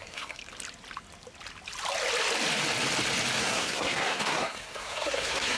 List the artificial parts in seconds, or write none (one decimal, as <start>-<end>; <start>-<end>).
0.0-0.4; 3.4-5.6